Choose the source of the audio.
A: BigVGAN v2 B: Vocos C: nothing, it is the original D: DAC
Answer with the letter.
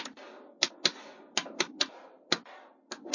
C